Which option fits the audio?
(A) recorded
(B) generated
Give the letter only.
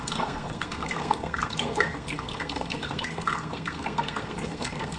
B